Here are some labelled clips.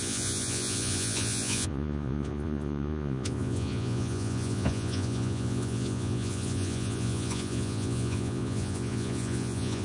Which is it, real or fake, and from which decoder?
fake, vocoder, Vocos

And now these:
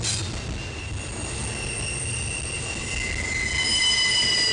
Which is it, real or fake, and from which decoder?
real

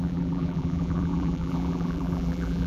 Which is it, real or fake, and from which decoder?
fake, vocoder, BigVGAN v2